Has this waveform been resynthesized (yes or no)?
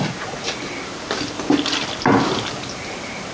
no